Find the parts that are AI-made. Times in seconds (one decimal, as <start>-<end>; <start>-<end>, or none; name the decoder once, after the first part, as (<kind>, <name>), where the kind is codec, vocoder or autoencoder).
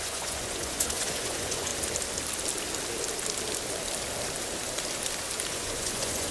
0.0-1.7 (vocoder, Vocos); 5.5-6.3